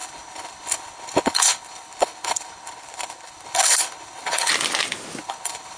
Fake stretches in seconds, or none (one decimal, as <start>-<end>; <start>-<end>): 0.0-4.5; 5.2-5.8